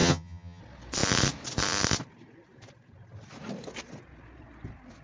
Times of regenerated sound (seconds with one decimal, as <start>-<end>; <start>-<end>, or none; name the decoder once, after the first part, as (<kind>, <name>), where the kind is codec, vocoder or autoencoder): 0.0-0.6 (vocoder, HiFi-GAN)